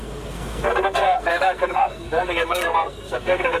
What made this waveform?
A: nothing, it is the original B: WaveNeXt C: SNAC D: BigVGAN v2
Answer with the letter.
C